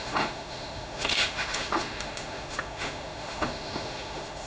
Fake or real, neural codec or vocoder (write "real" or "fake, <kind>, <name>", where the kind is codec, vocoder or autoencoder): fake, autoencoder, DAC-VAE